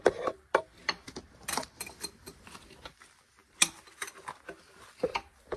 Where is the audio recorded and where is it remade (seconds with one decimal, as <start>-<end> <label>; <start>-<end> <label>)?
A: 0.0-5.6 remade